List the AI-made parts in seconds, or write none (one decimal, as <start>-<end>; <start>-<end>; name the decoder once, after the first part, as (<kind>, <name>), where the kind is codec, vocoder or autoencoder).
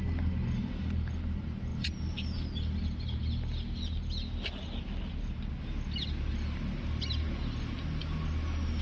none